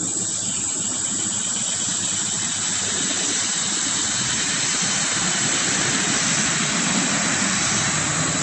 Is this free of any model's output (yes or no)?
yes